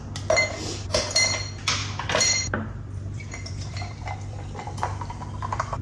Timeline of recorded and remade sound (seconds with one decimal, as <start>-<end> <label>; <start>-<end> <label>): 0.0-1.8 recorded; 1.8-5.1 remade; 5.1-5.8 recorded